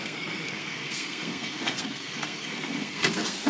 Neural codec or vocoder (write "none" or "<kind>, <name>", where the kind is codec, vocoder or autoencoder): codec, SNAC